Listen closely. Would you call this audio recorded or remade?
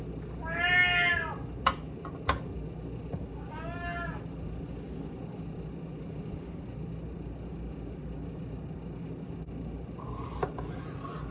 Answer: recorded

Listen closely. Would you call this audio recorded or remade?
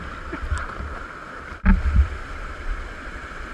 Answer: remade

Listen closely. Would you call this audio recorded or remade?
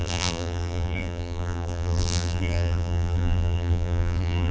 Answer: remade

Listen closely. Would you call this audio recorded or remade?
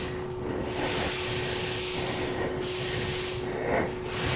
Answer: recorded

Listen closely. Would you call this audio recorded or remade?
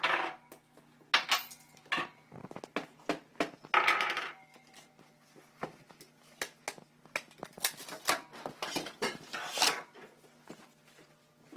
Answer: recorded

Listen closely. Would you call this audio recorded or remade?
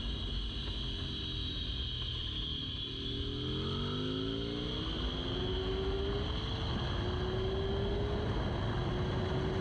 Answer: recorded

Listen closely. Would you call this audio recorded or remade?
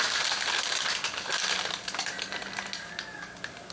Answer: recorded